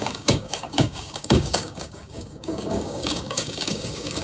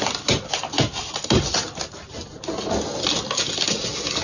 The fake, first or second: first